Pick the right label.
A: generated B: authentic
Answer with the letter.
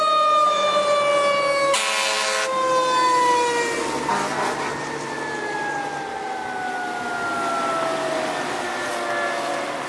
B